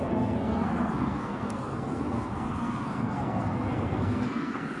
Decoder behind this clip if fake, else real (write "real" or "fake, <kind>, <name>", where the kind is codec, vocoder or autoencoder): fake, codec, SNAC